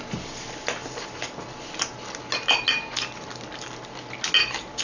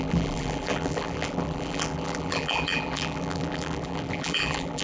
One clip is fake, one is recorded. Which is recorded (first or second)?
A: first